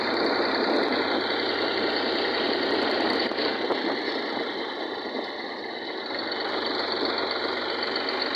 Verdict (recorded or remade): remade